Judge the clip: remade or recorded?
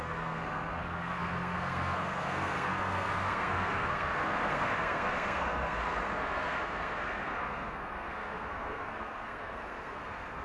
remade